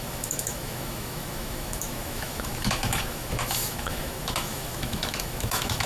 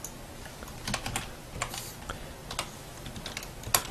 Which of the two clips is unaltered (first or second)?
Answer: second